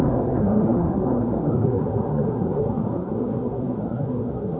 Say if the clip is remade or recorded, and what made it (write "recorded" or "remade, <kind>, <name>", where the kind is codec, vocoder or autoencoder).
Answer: remade, codec, SNAC